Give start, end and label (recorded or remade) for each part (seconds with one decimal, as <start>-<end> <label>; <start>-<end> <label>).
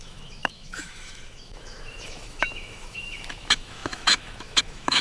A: 0.0-5.0 remade